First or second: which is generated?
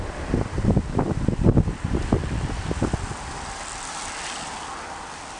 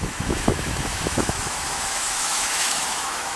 second